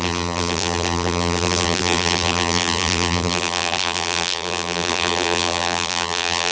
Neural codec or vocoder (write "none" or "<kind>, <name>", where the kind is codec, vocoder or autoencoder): vocoder, BigVGAN v2